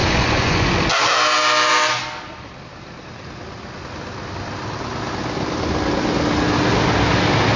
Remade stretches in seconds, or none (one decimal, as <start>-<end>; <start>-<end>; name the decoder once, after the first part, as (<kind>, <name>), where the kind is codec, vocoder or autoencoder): 0.0-0.7 (vocoder, Vocos)

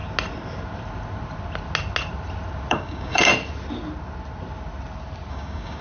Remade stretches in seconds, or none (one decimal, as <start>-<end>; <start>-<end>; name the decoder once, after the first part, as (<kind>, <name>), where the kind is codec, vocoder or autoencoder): 2.7-3.3 (codec, DAC); 5.3-5.8